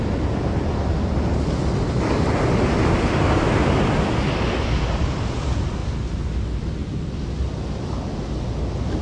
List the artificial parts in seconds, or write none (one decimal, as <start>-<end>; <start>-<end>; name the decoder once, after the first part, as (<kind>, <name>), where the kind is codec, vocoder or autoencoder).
none